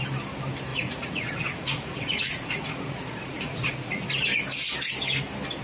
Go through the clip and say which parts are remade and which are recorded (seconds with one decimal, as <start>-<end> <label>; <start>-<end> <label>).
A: 0.0-0.7 recorded; 0.7-4.1 remade; 4.1-5.6 recorded